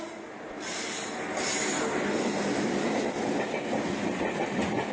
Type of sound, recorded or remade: recorded